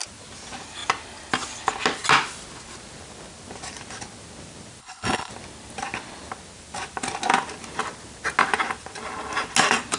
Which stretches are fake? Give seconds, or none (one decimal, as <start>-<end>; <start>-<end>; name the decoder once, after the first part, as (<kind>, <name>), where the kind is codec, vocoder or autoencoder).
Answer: 4.8-5.3 (codec, HILCodec)